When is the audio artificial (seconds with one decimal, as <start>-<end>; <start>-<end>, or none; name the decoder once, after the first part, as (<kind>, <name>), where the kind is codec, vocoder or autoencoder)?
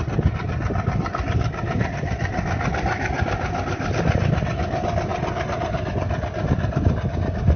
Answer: none